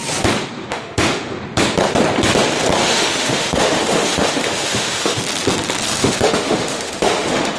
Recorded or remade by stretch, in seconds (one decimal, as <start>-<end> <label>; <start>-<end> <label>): 0.0-0.7 recorded; 0.7-1.3 remade; 1.3-2.8 recorded; 2.8-5.2 remade; 5.2-6.0 recorded; 6.0-7.6 remade